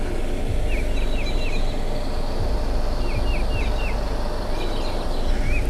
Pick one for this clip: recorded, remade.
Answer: recorded